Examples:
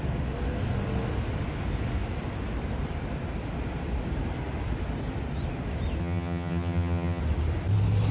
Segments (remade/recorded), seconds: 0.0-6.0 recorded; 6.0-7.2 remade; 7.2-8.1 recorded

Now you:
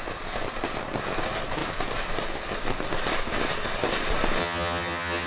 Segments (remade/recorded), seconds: 0.0-4.4 recorded; 4.4-5.3 remade

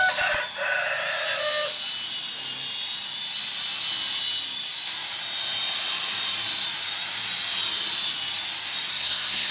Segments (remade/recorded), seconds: 0.0-8.9 recorded; 8.9-9.5 remade

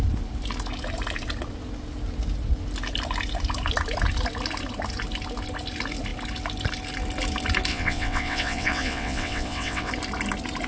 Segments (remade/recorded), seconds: 0.0-7.7 recorded; 7.7-9.9 remade; 9.9-10.7 recorded

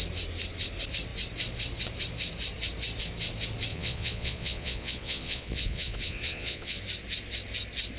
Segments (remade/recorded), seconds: 0.0-3.7 recorded; 3.7-6.8 remade; 6.8-8.0 recorded